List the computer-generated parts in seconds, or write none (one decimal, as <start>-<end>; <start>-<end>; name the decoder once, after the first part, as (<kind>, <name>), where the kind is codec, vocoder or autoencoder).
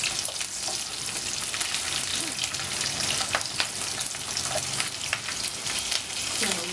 none